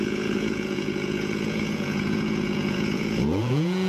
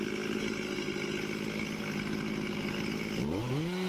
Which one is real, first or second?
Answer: second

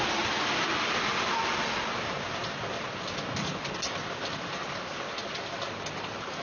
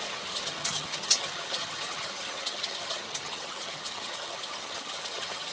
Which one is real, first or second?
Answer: first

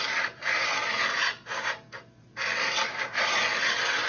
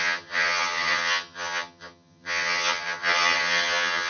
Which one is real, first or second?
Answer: first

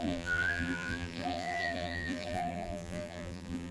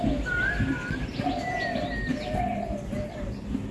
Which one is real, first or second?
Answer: second